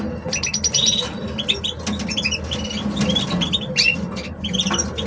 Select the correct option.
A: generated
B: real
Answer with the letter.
B